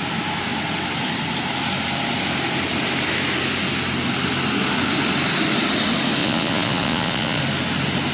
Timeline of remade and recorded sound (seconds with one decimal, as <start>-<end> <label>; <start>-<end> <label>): 0.0-6.2 recorded; 6.2-7.4 remade; 7.4-8.1 recorded